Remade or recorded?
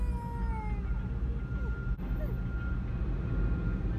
recorded